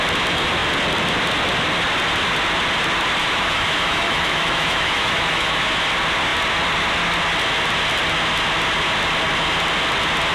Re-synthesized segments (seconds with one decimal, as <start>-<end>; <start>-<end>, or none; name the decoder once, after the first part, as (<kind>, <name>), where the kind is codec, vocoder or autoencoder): 3.2-5.6 (autoencoder, DAC-VAE)

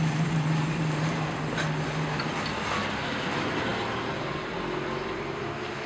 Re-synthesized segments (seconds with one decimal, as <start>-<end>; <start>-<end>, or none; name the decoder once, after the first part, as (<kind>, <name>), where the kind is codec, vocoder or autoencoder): none